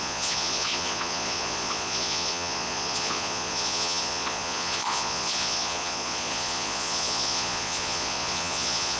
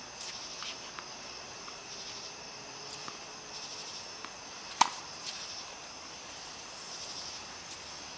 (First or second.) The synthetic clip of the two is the first